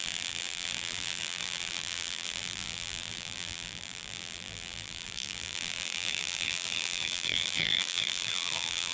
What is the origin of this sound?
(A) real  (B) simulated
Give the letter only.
B